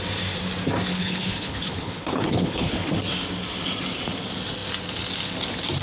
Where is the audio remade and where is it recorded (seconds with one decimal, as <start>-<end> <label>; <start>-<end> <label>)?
0.0-0.9 recorded; 0.9-2.9 remade; 2.9-5.8 recorded